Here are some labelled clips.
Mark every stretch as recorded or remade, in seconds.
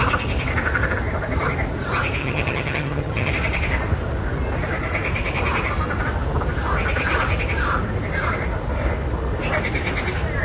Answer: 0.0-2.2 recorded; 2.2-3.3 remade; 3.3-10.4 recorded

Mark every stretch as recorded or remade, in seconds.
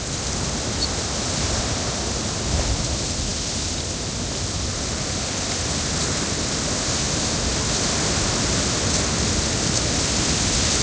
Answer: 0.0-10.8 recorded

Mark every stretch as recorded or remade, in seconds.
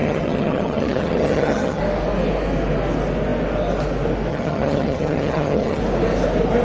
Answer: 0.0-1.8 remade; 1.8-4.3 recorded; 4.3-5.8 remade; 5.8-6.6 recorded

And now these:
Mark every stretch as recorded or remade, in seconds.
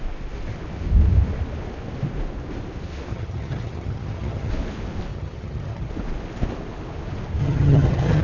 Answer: 0.0-3.1 recorded; 3.1-4.5 remade; 4.5-5.1 recorded; 5.1-5.9 remade; 5.9-7.4 recorded; 7.4-8.2 remade